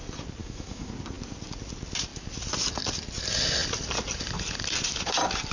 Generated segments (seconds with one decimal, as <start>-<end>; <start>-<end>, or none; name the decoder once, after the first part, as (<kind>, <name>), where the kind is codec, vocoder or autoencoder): 0.4-0.9 (autoencoder, DAC-VAE)